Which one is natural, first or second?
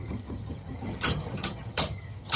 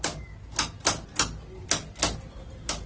second